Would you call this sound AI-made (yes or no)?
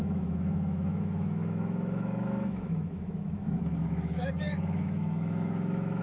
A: yes